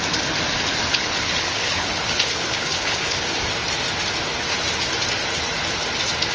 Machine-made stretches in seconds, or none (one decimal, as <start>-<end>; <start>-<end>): 0.9-3.2